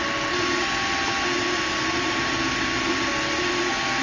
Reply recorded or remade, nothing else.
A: recorded